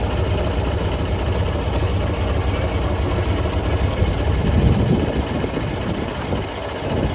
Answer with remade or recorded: recorded